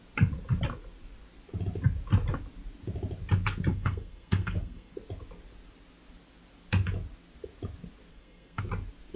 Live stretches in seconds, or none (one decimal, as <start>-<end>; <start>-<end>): 0.0-3.7; 4.9-8.1; 8.6-9.2